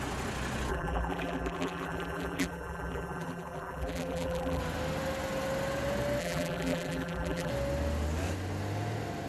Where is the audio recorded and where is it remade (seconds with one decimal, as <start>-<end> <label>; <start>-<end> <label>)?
0.0-0.7 recorded; 0.7-4.6 remade; 4.6-6.2 recorded; 6.2-7.5 remade; 7.5-9.3 recorded